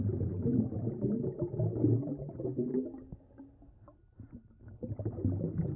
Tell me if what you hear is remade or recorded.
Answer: recorded